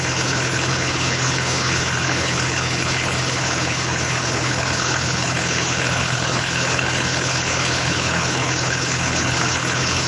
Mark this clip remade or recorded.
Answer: remade